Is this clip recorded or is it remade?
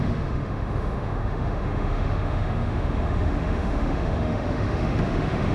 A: remade